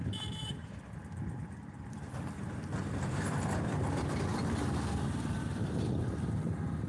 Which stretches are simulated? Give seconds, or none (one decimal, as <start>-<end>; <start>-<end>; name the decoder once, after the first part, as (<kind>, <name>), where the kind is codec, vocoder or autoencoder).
0.0-1.0 (vocoder, BigVGAN v2); 1.6-6.9